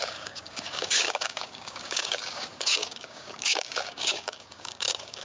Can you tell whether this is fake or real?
fake